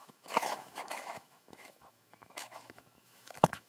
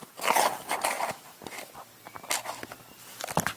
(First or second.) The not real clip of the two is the first